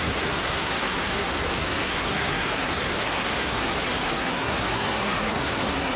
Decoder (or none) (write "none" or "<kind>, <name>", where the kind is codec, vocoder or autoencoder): codec, SNAC